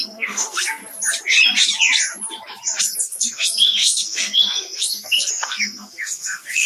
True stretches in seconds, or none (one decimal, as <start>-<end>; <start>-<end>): 0.8-2.8